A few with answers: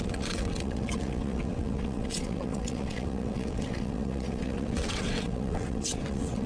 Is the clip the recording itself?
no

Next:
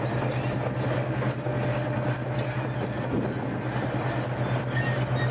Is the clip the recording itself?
yes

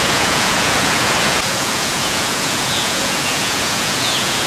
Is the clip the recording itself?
no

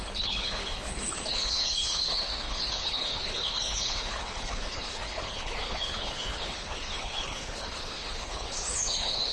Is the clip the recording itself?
no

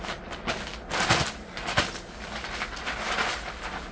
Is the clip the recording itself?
yes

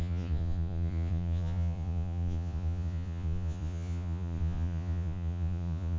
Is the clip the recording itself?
no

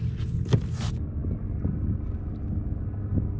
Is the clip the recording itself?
yes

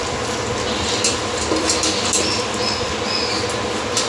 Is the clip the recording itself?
yes